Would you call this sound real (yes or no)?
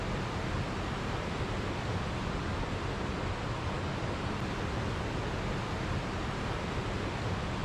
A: yes